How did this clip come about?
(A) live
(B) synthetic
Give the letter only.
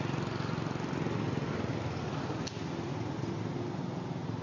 A